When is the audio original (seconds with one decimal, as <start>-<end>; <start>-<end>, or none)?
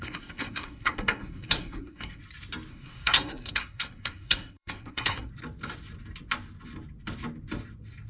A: 2.2-2.7; 5.3-8.1